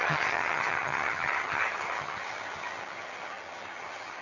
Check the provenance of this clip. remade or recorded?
remade